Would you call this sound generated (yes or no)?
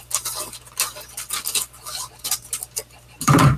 no